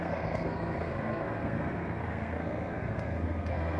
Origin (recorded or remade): remade